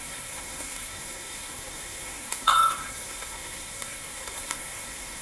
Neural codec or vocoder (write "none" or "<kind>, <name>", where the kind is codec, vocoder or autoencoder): codec, SNAC